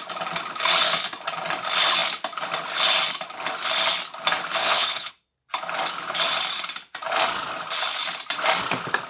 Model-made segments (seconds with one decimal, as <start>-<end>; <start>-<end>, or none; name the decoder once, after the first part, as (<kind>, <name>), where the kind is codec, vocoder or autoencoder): 4.6-5.1 (codec, HILCodec)